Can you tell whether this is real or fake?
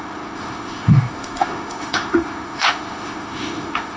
fake